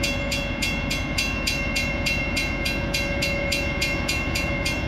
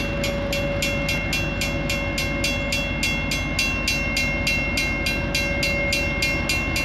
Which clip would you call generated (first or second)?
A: first